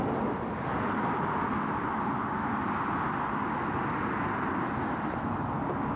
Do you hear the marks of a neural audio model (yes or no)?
no